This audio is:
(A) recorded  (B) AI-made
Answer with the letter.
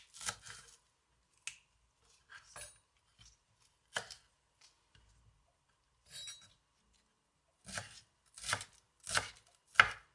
A